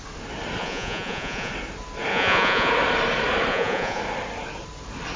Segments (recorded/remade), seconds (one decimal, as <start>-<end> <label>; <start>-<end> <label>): 0.0-0.6 recorded; 0.6-1.5 remade; 1.5-2.1 recorded; 2.1-2.7 remade; 2.7-3.5 recorded; 3.5-4.0 remade; 4.0-5.2 recorded